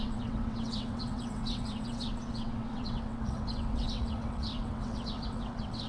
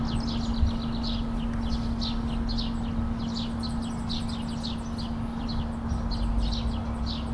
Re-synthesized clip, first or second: first